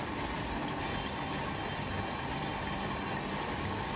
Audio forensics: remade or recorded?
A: recorded